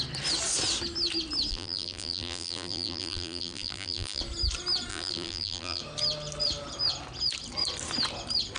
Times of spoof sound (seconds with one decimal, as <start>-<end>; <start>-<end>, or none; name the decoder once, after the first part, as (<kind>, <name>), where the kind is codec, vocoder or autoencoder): 1.5-4.2 (vocoder, BigVGAN v2); 4.9-5.8